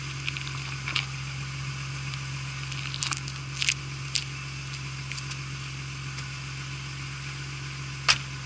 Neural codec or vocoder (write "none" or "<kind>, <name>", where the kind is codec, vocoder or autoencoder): none